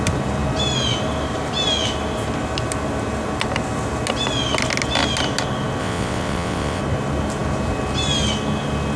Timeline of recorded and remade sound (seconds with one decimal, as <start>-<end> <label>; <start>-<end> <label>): 0.0-5.8 recorded; 5.8-6.8 remade; 6.8-9.0 recorded